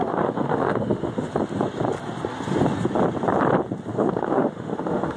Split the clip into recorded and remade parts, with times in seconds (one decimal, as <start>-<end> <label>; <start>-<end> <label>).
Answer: 0.0-1.3 remade; 1.3-3.9 recorded; 3.9-5.2 remade